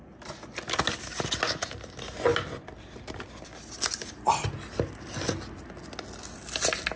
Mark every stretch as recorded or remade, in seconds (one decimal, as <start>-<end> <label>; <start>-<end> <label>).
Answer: 0.0-7.0 recorded